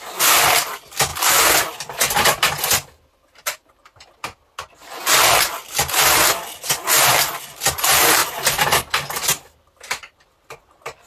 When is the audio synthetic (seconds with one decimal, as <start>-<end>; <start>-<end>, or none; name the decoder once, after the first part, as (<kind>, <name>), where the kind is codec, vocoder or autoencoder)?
none